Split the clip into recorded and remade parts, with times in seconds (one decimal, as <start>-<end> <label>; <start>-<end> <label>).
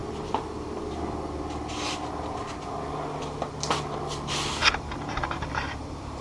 0.0-4.6 recorded; 4.6-6.2 remade